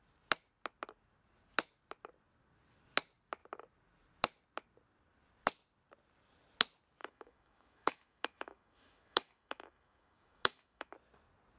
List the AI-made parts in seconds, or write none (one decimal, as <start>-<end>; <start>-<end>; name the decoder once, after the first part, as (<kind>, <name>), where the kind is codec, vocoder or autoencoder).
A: 7.0-10.9 (autoencoder, DAC-VAE)